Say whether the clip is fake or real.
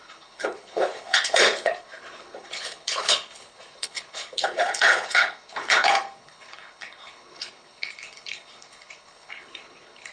fake